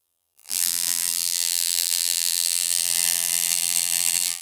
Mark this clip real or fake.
fake